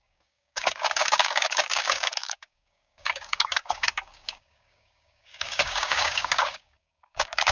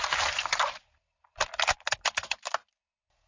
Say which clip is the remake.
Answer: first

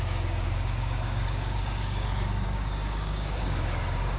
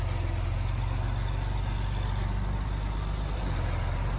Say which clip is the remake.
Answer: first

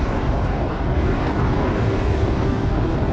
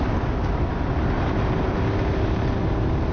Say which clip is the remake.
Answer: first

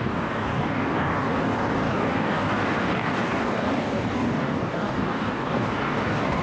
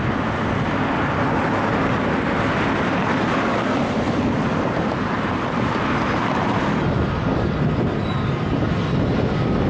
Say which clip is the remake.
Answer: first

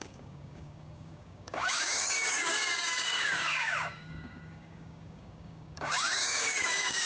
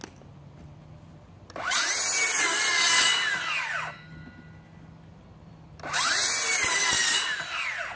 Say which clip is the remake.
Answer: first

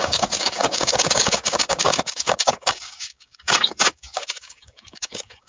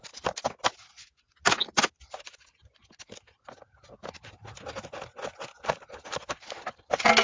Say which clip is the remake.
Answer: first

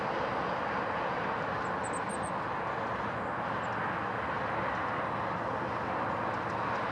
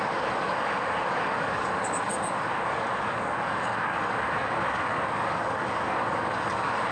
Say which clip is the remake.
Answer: second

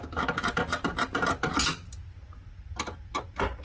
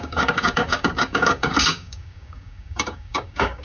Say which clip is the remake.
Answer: second